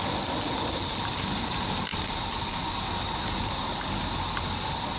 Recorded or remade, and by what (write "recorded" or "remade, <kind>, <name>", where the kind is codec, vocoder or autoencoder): recorded